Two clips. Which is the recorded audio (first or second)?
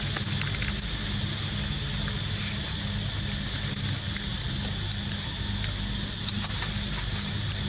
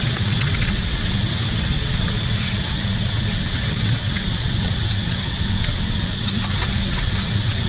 first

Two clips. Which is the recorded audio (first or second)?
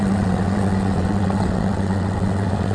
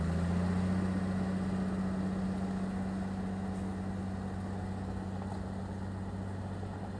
second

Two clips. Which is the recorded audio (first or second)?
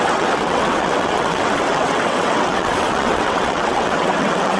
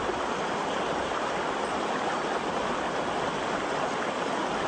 second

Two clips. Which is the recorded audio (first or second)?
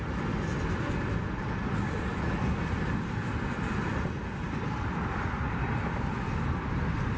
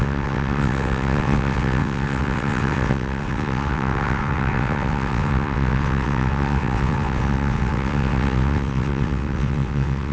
first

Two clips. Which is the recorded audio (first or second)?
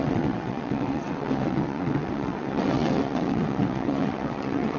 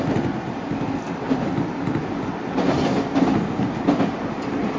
second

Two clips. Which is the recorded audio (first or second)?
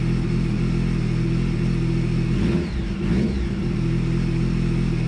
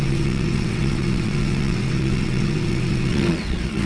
first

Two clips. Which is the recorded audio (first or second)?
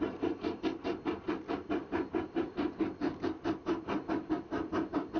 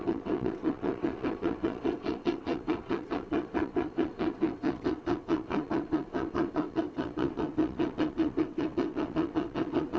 first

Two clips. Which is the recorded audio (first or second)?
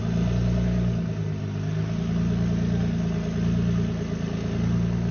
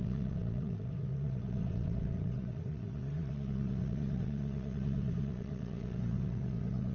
first